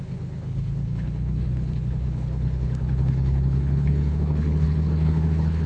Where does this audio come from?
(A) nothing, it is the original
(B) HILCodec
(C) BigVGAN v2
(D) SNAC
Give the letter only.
B